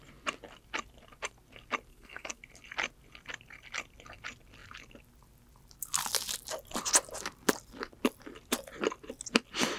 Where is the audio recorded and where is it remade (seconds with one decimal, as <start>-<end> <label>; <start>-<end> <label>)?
0.0-1.9 recorded; 1.9-2.4 remade; 2.4-9.8 recorded